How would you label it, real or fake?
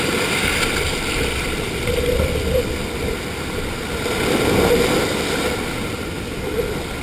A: real